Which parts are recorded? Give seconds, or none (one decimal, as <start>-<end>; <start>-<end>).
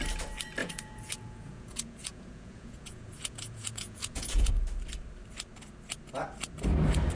0.0-0.6; 4.5-7.2